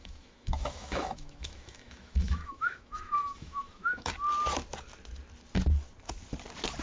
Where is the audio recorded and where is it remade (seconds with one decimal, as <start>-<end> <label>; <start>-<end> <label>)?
0.0-4.1 remade; 4.1-6.8 recorded